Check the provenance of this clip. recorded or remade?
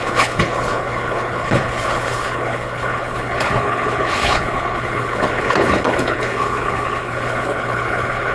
remade